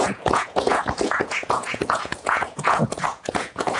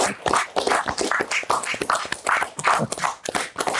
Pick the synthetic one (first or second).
first